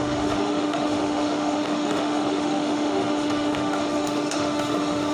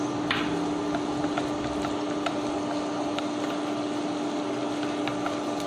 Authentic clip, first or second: second